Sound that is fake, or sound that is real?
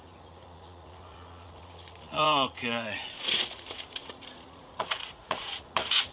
fake